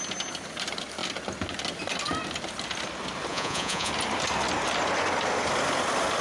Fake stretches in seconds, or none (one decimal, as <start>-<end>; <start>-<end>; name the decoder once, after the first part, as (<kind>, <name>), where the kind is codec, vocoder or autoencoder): 3.3-3.9 (vocoder, Vocos)